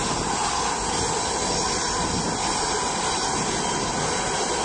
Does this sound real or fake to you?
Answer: real